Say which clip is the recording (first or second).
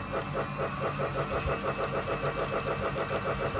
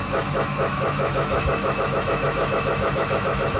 first